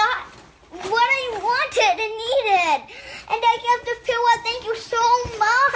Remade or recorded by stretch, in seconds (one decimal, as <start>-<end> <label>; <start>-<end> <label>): 0.0-5.8 recorded